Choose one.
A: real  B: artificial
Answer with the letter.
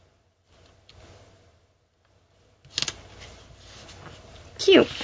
A